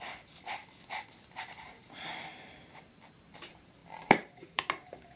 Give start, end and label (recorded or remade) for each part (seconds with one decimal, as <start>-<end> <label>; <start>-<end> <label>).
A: 0.0-0.6 remade; 0.6-3.3 recorded; 3.3-5.2 remade